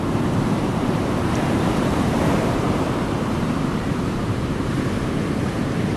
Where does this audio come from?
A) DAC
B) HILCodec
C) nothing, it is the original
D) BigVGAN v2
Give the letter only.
D